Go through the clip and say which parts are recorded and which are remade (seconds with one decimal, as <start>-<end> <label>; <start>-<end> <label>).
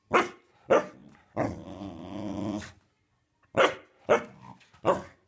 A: 0.0-5.3 recorded